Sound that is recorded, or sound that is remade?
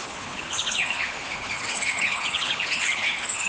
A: remade